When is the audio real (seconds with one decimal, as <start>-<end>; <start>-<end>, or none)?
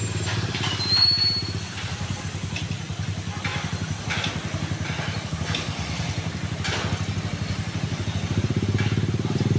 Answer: 2.2-3.5; 4.0-9.6